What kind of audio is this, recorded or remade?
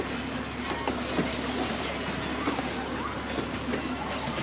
recorded